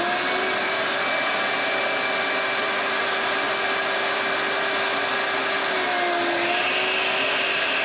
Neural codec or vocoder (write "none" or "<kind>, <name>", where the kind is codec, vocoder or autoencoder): none